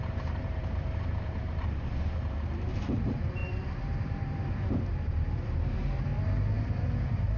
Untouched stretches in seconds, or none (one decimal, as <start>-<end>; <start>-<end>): 6.1-7.0